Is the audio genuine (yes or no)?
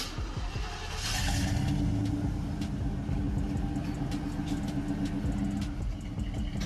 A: yes